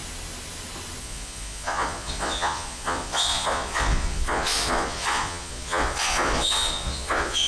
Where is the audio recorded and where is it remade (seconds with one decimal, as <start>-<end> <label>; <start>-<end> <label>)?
0.0-1.0 recorded; 1.0-7.5 remade